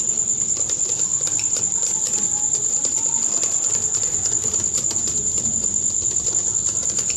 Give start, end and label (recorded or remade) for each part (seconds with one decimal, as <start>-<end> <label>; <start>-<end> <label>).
0.0-7.2 recorded